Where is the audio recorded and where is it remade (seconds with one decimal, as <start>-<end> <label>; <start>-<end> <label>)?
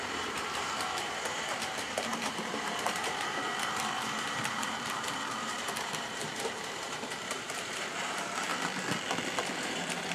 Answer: 0.0-8.5 remade; 8.5-9.5 recorded; 9.5-10.1 remade